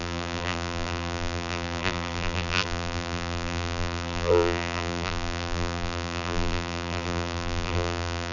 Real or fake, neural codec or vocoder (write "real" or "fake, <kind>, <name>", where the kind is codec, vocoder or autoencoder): fake, vocoder, BigVGAN v2